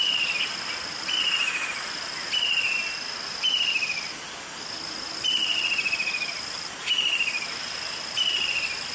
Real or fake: real